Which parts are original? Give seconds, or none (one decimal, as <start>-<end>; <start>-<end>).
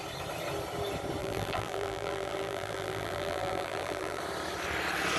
0.0-1.2; 4.2-5.2